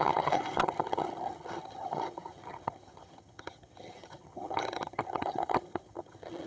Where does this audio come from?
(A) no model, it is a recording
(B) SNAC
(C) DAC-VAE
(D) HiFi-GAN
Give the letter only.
D